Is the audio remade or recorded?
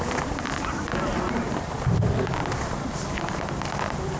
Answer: recorded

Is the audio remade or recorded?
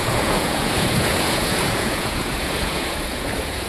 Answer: remade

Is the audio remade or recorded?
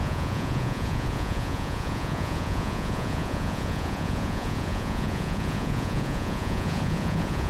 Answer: remade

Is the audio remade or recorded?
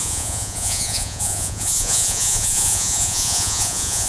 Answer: remade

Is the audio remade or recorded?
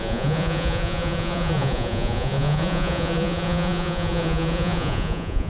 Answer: remade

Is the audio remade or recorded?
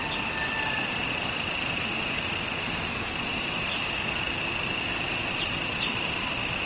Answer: recorded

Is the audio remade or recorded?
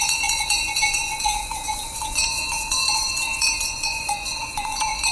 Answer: remade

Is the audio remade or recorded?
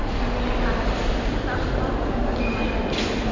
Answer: recorded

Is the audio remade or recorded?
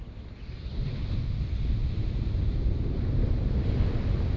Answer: recorded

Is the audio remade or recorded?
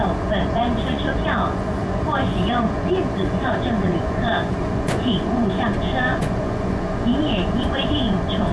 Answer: remade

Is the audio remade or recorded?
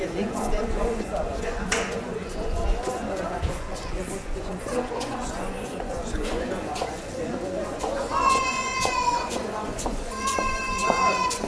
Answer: remade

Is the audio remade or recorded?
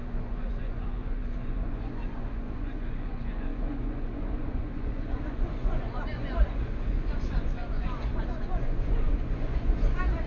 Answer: remade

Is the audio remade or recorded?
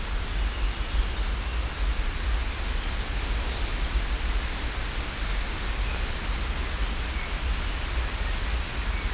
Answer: recorded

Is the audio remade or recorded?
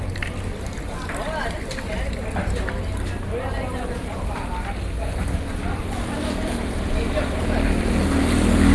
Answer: recorded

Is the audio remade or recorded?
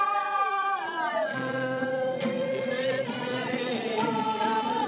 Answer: remade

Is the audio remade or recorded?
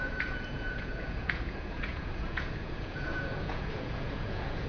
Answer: remade